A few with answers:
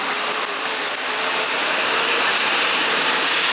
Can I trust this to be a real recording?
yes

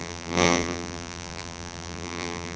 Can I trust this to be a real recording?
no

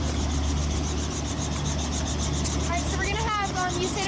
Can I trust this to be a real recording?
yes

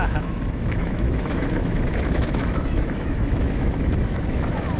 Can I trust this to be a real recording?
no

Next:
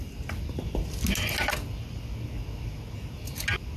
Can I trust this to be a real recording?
yes